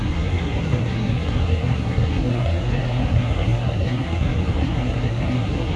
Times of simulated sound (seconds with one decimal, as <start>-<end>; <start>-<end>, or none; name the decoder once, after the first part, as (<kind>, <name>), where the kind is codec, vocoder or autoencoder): 0.0-5.8 (codec, SNAC)